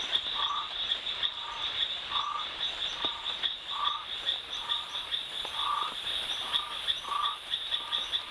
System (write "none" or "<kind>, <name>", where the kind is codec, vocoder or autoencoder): vocoder, BigVGAN v2